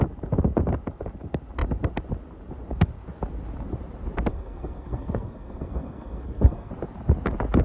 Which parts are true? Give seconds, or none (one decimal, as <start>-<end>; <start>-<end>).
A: 0.0-4.3; 6.7-7.6

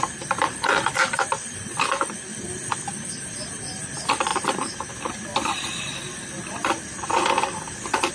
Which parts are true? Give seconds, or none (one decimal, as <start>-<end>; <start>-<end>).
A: 0.0-8.1

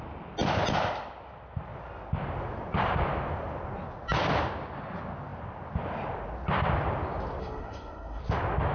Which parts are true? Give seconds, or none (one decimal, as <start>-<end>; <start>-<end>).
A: 0.0-7.4; 8.2-8.7

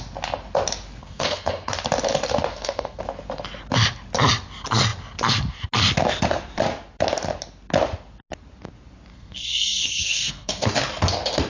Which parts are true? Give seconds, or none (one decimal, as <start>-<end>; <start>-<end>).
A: 0.0-1.0; 1.7-2.5; 3.0-9.1; 10.7-11.5